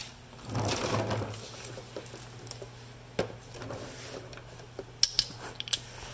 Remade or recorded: recorded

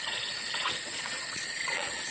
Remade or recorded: remade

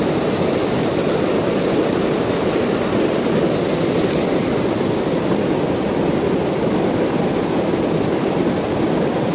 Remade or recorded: recorded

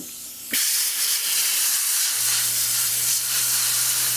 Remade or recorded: remade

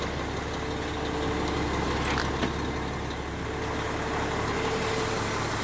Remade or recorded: recorded